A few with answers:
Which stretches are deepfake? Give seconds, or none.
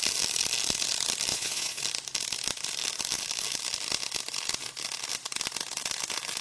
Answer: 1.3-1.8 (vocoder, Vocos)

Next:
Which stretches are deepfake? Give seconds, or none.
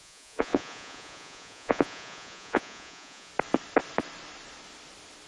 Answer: 0.0-3.3 (vocoder, Vocos)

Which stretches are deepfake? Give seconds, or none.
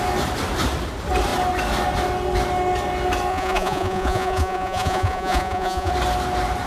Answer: 3.3-5.9 (vocoder, Vocos)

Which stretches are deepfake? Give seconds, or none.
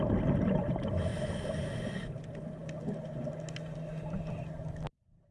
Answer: none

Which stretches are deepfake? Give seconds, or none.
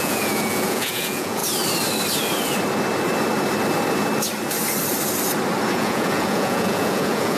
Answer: 0.0-1.4 (vocoder, Vocos); 5.7-7.4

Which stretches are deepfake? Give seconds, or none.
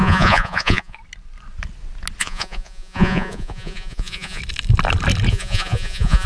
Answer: 0.0-1.0 (vocoder, Vocos); 2.2-4.4; 5.3-6.3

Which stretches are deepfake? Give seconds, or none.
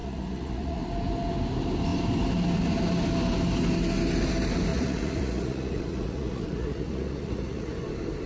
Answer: 0.0-0.8 (vocoder, Vocos); 4.7-7.7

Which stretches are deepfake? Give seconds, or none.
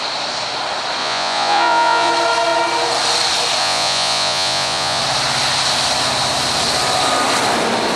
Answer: 1.0-2.1 (vocoder, Vocos); 3.6-5.0